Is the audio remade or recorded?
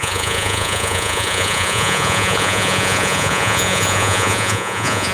remade